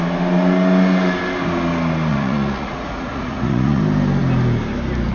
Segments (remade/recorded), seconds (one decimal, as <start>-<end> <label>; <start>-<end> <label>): 0.0-2.1 recorded; 2.1-3.8 remade; 3.8-5.1 recorded